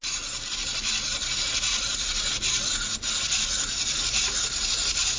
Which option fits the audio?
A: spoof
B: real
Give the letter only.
B